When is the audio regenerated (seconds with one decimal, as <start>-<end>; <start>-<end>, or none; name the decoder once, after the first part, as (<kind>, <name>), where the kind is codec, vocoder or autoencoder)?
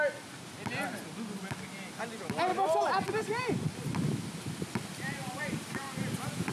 none